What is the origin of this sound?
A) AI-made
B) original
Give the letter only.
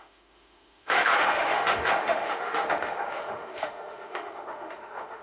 A